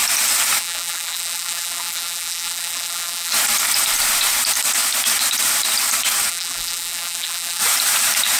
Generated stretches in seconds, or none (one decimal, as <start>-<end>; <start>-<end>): 0.6-3.3; 6.3-7.6